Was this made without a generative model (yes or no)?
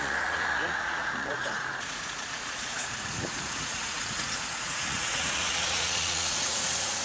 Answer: no